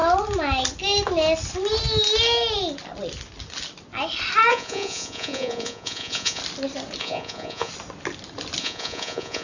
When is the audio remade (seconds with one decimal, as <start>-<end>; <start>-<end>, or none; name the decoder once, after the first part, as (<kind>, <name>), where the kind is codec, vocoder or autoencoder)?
4.5-6.4 (vocoder, Vocos); 7.0-7.7; 8.6-9.4